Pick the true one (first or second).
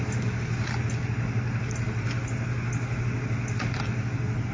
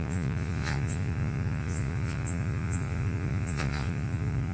first